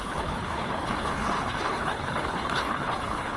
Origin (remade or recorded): remade